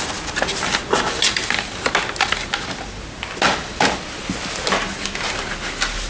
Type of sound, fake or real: real